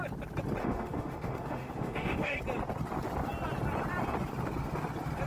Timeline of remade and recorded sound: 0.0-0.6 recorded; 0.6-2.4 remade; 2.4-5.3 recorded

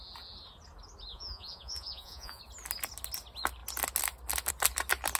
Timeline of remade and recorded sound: 0.0-1.1 recorded; 1.1-2.4 remade; 2.4-5.2 recorded

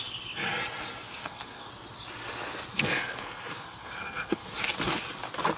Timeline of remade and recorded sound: 0.0-1.2 recorded; 1.2-1.7 remade; 1.7-2.7 recorded; 2.7-4.5 remade; 4.5-5.6 recorded

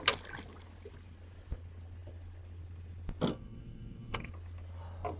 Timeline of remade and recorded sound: 0.0-3.3 recorded; 3.3-4.3 remade; 4.3-5.2 recorded

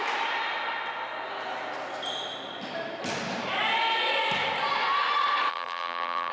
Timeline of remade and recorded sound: 0.0-5.5 recorded; 5.5-6.3 remade